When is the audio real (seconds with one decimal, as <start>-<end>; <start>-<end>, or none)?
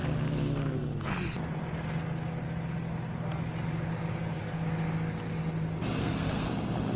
0.0-6.0; 6.5-7.0